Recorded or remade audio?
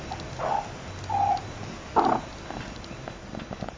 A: recorded